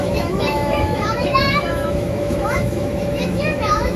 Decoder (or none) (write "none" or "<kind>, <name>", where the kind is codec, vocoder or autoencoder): autoencoder, DAC-VAE